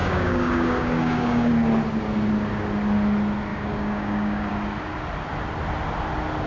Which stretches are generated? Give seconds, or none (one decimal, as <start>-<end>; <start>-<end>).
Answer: 0.0-1.5; 3.5-4.5